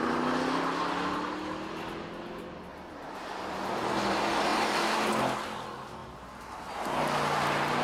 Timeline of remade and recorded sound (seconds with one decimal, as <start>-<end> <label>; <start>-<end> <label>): 0.0-7.8 recorded